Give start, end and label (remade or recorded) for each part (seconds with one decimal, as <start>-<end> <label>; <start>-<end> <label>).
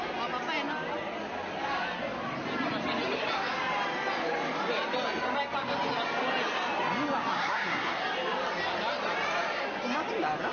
0.0-7.4 recorded; 7.4-8.0 remade; 8.0-10.5 recorded